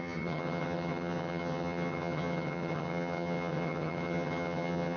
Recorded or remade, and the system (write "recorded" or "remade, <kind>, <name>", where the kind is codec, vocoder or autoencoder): remade, vocoder, HiFi-GAN